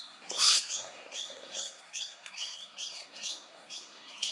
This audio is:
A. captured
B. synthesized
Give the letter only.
B